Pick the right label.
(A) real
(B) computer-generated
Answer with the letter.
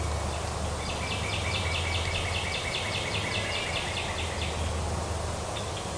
A